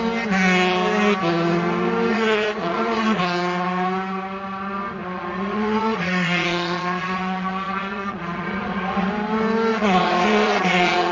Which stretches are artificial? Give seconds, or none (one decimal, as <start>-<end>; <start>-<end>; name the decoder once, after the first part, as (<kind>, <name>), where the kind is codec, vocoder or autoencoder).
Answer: 2.1-3.2 (vocoder, Vocos); 5.0-9.1; 9.7-11.1